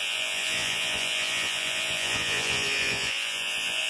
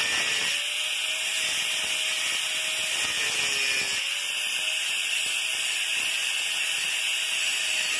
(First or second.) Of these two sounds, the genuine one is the second